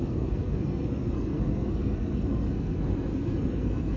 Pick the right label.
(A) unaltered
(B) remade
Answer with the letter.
B